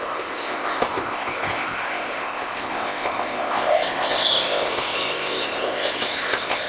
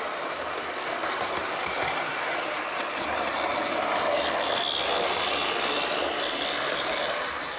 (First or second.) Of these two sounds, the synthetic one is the first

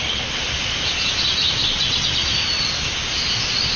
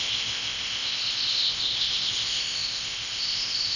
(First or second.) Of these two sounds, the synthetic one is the second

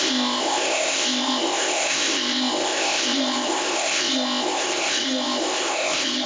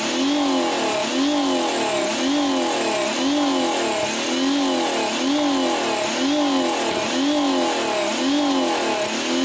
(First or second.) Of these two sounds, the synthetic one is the first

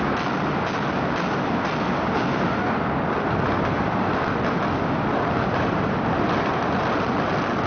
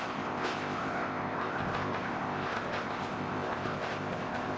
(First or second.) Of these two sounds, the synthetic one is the second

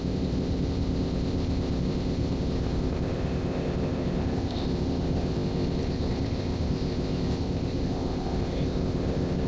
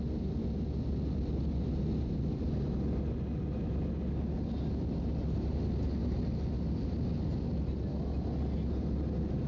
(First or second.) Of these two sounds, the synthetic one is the first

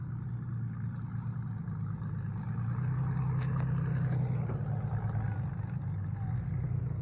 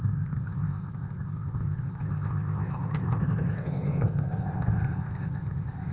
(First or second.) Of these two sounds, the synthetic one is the second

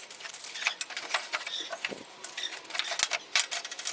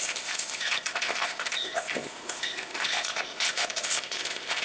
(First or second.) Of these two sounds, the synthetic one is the second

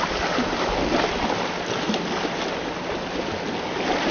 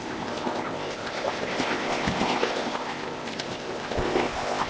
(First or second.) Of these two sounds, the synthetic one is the second